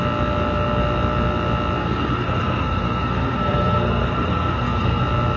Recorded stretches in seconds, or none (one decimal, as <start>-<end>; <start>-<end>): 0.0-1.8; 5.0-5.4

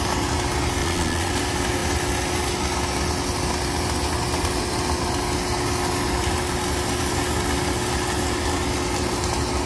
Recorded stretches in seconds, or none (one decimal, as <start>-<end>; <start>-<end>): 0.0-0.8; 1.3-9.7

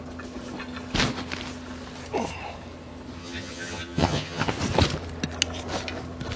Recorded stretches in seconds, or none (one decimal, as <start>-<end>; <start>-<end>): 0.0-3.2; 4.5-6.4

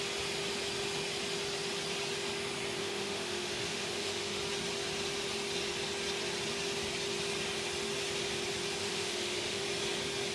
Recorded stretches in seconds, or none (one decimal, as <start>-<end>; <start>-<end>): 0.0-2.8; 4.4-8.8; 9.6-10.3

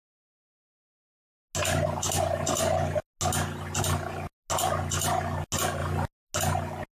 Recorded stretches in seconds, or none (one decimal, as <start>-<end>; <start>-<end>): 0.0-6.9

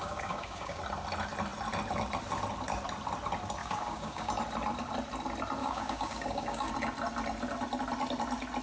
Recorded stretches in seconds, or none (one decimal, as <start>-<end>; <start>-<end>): 0.8-3.6; 4.3-5.6; 6.7-8.6

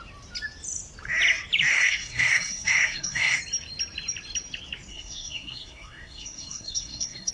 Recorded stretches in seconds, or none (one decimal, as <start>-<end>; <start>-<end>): 0.0-1.7; 3.4-4.9

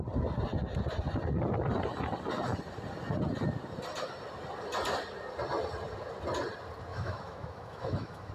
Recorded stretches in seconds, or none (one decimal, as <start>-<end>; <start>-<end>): 0.0-6.9